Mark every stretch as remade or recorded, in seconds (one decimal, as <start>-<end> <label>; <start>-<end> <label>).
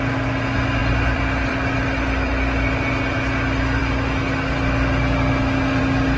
0.0-0.8 recorded; 0.8-2.7 remade; 2.7-6.2 recorded